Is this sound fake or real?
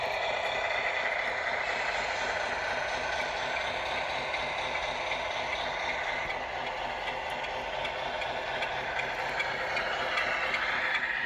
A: real